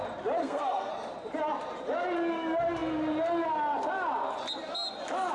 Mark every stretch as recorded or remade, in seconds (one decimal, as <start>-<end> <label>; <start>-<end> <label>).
0.0-0.4 recorded; 0.4-0.9 remade; 0.9-5.3 recorded